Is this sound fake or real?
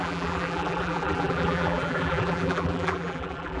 fake